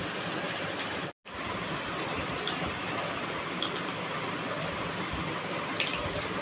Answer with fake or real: real